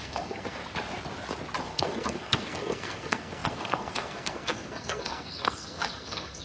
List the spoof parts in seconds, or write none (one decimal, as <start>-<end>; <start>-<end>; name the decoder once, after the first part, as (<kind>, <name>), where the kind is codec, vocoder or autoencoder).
0.0-0.6 (codec, SNAC); 1.6-6.4